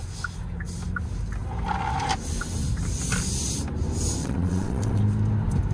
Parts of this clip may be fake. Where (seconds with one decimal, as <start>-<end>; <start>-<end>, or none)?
4.2-5.0